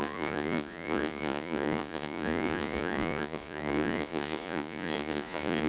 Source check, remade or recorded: remade